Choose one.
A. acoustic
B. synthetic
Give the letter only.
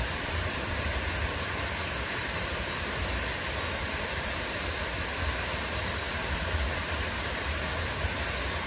A